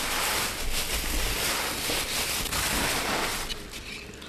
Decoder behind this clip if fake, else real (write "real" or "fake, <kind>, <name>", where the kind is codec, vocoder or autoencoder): real